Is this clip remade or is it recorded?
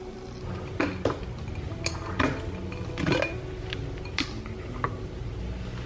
recorded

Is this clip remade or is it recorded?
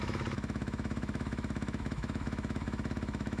remade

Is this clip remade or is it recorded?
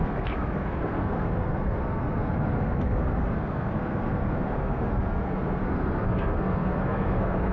remade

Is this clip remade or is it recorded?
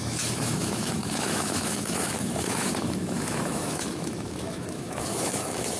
remade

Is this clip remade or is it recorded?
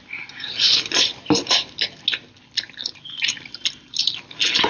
recorded